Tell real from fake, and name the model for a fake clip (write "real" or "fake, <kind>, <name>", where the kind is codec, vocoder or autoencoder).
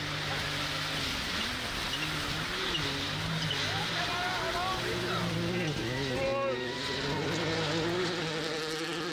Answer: real